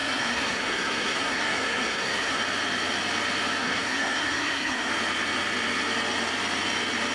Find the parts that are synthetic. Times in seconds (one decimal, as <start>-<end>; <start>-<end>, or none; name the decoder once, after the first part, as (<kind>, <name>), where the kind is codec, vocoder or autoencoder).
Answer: 0.0-2.4 (codec, SNAC); 3.6-4.9